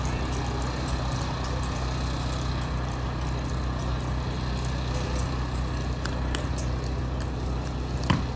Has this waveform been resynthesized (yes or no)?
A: no